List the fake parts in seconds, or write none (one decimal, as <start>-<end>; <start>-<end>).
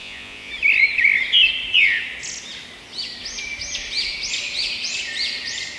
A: 0.0-0.5